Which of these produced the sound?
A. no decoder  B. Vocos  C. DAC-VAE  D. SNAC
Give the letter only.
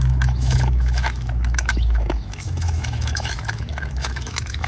C